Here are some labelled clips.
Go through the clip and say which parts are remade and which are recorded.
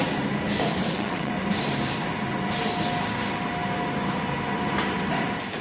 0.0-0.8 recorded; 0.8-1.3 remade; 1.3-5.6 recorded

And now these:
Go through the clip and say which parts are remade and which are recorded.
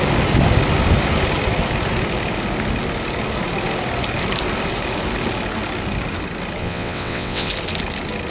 0.0-6.6 recorded; 6.6-7.5 remade; 7.5-8.3 recorded